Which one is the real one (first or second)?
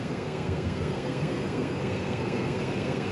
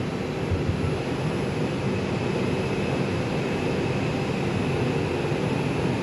second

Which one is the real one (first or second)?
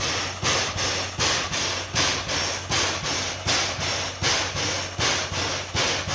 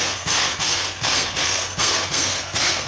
first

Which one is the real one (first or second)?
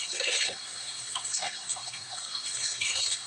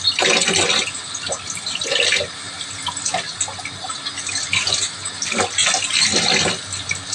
second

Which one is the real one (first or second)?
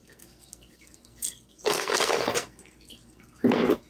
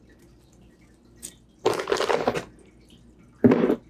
second